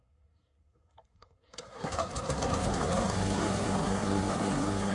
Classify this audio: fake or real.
fake